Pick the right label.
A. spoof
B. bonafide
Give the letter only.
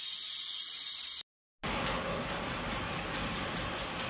B